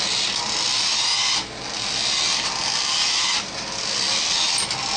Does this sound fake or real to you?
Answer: real